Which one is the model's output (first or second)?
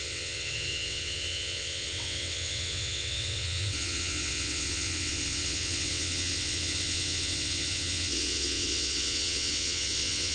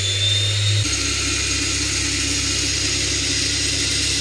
first